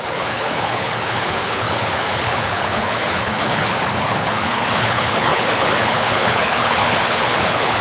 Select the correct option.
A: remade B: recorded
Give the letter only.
A